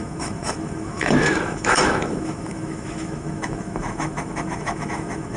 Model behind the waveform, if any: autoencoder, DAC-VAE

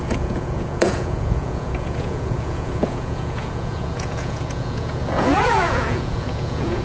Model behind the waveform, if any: vocoder, Vocos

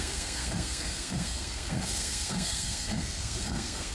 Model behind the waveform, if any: codec, SNAC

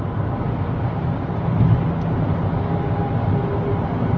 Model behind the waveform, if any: none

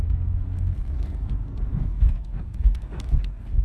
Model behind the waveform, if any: codec, SNAC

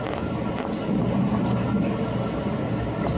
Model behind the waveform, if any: none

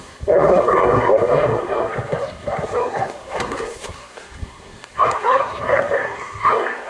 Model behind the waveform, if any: codec, SNAC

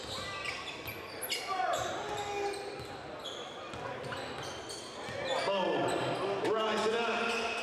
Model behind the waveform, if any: none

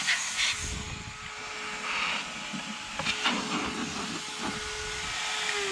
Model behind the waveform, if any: none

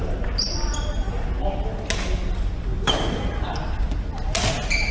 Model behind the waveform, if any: none